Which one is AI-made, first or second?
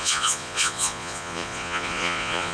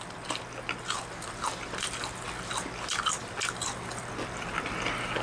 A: first